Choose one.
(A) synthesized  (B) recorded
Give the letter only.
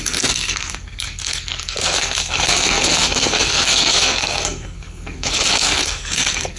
A